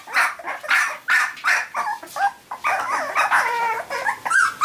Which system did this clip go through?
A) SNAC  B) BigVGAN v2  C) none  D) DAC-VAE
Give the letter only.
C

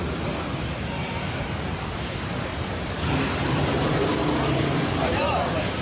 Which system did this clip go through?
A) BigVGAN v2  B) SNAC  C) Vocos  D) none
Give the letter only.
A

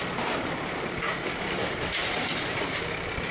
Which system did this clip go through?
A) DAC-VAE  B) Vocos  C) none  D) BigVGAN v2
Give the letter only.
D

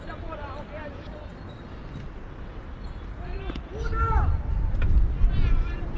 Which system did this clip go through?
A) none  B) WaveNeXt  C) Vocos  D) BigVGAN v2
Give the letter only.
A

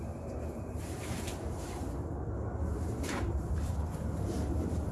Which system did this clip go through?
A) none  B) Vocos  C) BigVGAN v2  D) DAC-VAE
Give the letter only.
C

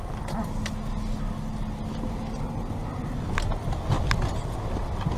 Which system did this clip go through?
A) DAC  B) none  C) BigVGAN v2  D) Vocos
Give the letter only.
B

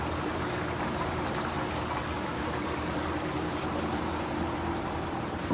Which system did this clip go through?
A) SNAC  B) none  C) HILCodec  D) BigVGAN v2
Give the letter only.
B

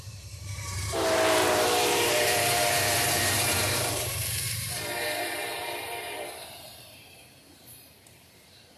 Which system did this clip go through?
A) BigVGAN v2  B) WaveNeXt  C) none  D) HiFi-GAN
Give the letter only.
A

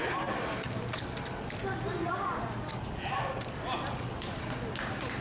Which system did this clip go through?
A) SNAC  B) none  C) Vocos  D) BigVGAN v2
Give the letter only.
D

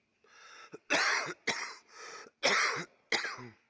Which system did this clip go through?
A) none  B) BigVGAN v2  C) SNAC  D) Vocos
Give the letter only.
A